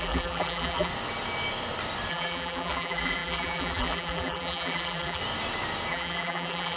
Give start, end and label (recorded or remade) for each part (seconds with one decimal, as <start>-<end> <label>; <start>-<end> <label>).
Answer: 0.0-0.9 remade; 0.9-2.1 recorded; 2.1-5.2 remade; 5.2-5.9 recorded; 5.9-6.8 remade